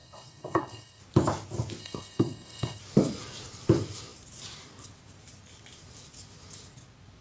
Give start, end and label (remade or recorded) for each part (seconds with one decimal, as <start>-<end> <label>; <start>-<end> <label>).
0.0-1.0 remade; 1.0-1.8 recorded; 1.8-2.8 remade; 2.8-7.2 recorded

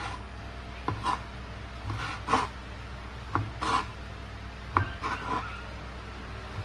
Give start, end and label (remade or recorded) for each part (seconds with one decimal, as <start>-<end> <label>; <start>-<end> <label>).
0.0-6.6 recorded